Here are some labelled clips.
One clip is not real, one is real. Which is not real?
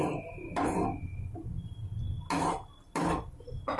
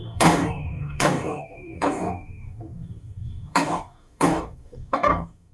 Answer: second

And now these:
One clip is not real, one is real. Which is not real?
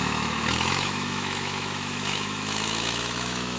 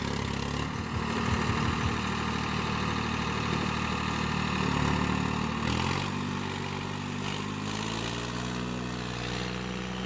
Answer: first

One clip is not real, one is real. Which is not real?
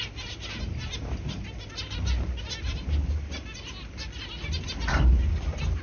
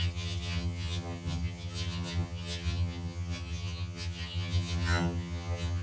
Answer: second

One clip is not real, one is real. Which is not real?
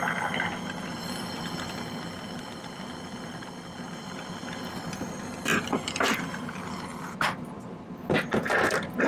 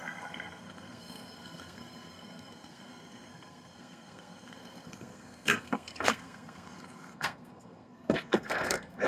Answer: second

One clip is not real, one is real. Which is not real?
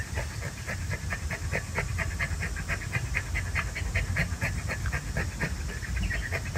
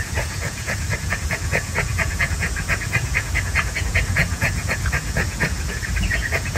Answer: second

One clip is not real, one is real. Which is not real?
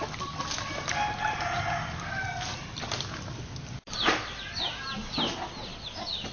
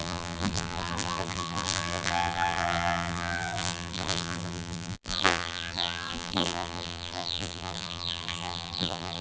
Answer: second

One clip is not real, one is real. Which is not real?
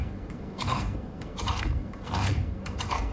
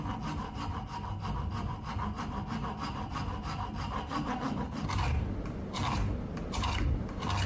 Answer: first